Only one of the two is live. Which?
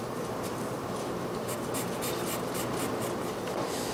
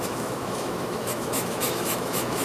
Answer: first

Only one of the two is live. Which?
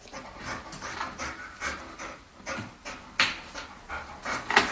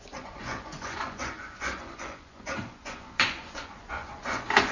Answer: first